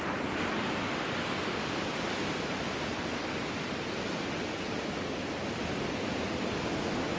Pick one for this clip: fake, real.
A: real